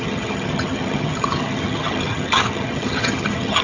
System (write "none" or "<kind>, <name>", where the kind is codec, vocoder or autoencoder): vocoder, HiFi-GAN